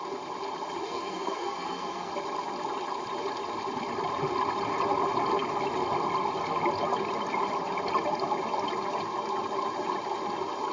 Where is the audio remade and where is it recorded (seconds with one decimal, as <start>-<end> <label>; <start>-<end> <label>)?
0.0-0.8 recorded; 0.8-2.1 remade; 2.1-10.7 recorded